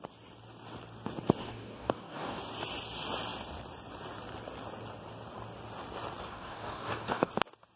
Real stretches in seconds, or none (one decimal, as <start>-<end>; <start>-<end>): 0.0-1.4; 2.4-6.3; 7.3-7.8